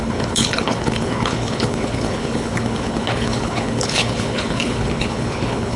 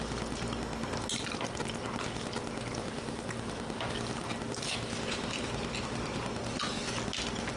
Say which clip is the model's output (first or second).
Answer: first